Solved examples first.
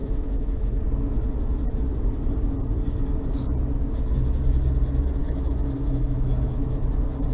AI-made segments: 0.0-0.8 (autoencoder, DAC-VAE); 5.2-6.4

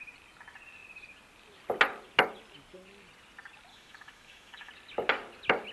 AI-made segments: 3.7-4.7 (autoencoder, DAC-VAE)

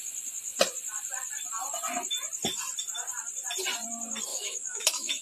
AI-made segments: 4.3-5.2 (autoencoder, DAC-VAE)